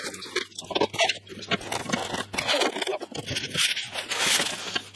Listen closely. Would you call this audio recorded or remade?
recorded